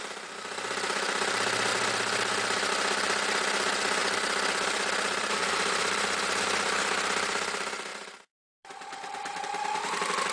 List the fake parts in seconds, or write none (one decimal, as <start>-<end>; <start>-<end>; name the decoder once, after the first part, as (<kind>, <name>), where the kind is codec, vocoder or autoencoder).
1.7-2.7 (vocoder, BigVGAN v2); 4.0-6.4; 7.9-9.4